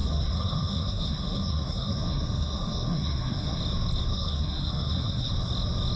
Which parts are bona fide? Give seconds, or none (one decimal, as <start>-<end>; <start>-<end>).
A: 3.6-4.1; 5.3-6.0